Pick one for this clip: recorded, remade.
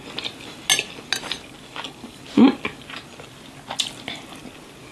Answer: recorded